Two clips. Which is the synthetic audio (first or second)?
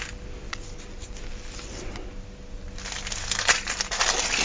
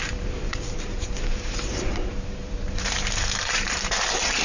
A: second